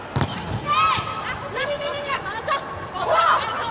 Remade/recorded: recorded